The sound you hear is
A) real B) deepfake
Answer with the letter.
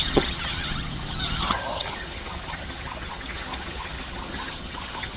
B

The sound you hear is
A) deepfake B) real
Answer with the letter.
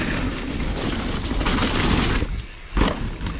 B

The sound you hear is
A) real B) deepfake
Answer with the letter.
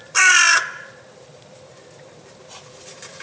B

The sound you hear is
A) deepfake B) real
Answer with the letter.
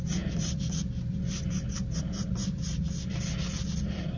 B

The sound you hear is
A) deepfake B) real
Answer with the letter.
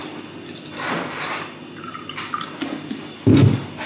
B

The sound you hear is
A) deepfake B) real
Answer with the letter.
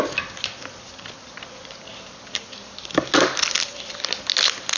B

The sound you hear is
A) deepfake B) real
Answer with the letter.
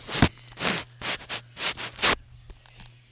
B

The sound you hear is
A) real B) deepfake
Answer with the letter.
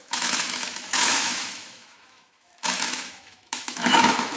B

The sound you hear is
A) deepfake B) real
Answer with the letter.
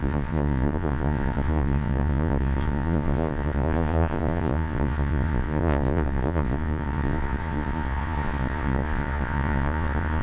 A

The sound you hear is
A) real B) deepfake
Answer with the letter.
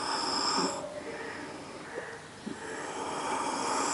A